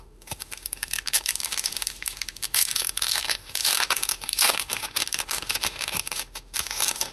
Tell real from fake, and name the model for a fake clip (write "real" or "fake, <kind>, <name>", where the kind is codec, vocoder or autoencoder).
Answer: fake, autoencoder, DAC-VAE